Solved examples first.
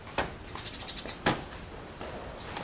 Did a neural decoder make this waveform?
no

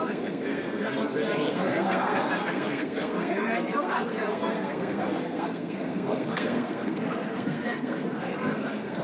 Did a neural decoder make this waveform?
yes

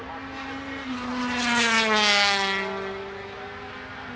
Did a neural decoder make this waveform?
no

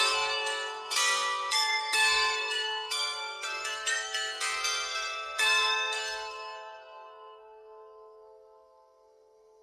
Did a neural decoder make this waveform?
yes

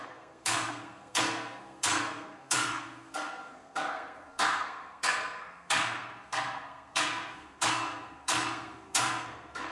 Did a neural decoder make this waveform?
yes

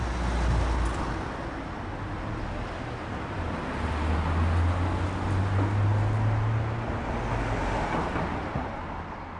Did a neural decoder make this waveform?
no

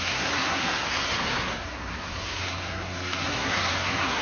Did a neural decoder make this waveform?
yes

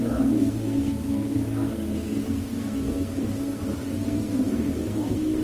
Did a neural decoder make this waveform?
yes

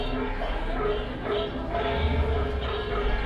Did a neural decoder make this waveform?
no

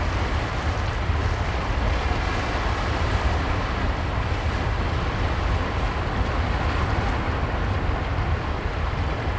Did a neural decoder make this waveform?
no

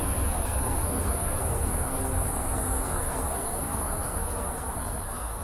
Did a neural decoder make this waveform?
yes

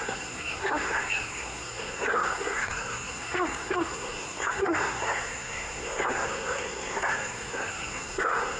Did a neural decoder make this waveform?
yes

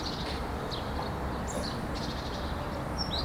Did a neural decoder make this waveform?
no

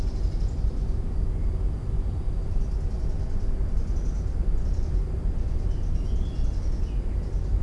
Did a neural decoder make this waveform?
no